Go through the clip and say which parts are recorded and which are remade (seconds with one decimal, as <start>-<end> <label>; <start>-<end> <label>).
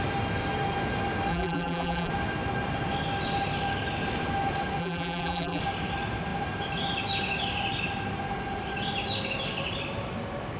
0.0-1.3 recorded; 1.3-2.1 remade; 2.1-4.8 recorded; 4.8-5.6 remade; 5.6-10.6 recorded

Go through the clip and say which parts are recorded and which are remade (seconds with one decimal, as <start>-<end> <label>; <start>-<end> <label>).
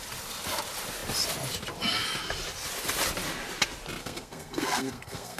0.0-4.0 recorded; 4.0-5.4 remade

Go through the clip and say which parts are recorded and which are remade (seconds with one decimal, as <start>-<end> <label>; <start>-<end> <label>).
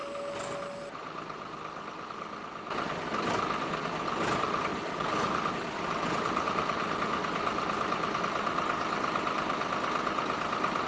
0.0-10.9 recorded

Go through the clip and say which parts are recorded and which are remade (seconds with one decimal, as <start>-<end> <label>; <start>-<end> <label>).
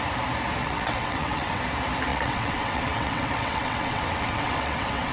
0.0-0.6 recorded; 0.6-1.6 remade; 1.6-2.1 recorded; 2.1-5.1 remade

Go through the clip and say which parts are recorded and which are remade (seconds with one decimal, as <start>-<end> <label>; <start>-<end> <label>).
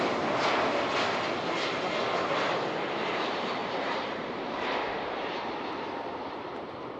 0.0-3.6 recorded; 3.6-7.0 remade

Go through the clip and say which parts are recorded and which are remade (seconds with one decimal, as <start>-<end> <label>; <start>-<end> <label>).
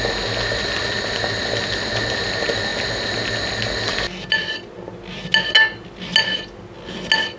0.0-7.4 recorded